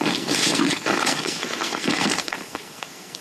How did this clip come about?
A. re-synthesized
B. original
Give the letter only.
A